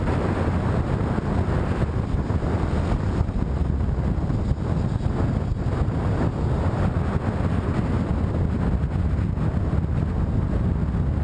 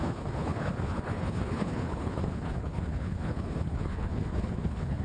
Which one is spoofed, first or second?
second